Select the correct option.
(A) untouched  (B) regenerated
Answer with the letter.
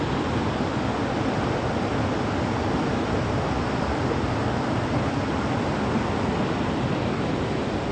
A